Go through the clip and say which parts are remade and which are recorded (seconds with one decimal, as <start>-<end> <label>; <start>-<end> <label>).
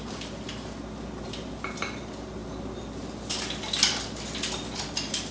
0.0-5.3 recorded